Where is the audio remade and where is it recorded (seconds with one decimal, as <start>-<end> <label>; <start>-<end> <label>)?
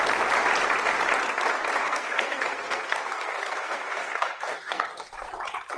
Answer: 0.0-1.8 recorded; 1.8-5.3 remade; 5.3-5.8 recorded